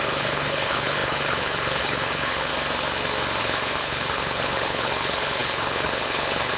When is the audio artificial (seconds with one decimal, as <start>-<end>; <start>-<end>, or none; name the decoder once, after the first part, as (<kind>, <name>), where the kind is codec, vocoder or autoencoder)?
0.0-2.5 (codec, HILCodec); 3.4-6.6